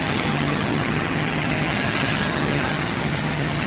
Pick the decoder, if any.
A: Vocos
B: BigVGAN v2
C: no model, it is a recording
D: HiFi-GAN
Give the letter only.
D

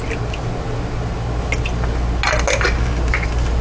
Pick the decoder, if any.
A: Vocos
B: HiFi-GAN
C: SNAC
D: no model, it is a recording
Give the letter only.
D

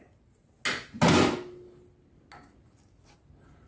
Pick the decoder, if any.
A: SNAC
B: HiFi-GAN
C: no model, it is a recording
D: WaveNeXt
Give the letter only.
C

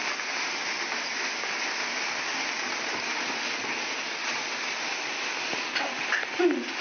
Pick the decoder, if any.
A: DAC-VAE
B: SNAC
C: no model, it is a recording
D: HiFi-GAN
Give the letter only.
C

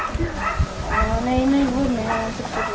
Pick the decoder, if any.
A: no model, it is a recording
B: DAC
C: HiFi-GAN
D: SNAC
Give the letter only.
A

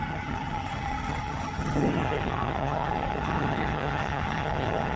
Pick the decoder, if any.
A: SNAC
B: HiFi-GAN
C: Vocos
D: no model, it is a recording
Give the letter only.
B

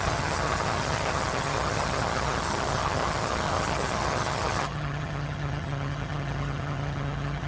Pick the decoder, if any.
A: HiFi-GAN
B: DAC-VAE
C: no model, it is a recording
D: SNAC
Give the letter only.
A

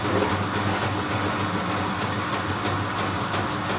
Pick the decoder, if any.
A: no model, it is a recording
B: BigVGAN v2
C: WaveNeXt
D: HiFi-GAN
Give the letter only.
A